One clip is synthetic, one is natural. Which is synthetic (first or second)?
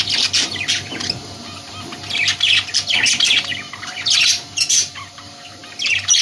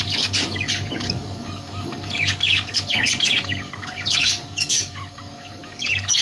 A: second